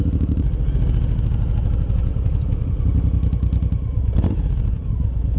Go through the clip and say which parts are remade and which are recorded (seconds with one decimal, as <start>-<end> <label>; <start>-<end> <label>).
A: 0.0-2.1 recorded; 2.1-4.9 remade; 4.9-5.4 recorded